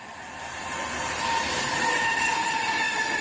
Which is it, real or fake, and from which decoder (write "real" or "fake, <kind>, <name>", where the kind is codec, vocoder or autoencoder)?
real